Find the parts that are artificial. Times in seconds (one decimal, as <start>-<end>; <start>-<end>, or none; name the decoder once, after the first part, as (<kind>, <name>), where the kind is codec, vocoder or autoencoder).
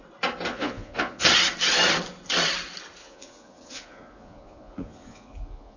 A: 0.5-1.2 (vocoder, Vocos); 3.0-5.8